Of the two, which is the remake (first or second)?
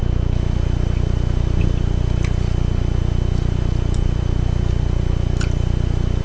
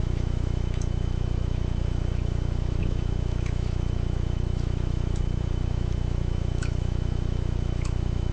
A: second